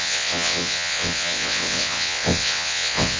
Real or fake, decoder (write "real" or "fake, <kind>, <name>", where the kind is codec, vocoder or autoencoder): fake, vocoder, WaveNeXt